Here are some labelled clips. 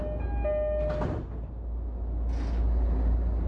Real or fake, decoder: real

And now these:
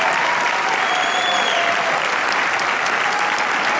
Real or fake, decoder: real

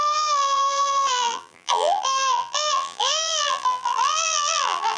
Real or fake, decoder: fake, vocoder, BigVGAN v2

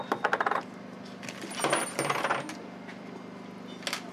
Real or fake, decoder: real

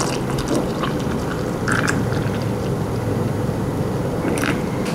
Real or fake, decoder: fake, vocoder, BigVGAN v2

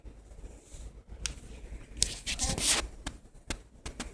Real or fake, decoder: real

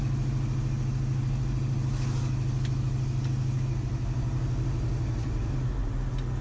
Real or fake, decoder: real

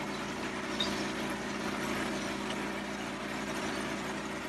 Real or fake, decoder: real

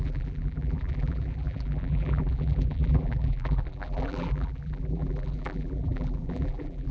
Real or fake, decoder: fake, vocoder, BigVGAN v2